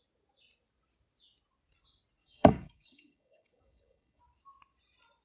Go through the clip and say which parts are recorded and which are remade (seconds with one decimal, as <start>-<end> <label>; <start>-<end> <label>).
0.0-2.2 recorded; 2.2-4.2 remade; 4.2-5.2 recorded